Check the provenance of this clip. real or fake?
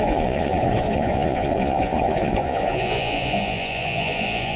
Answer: fake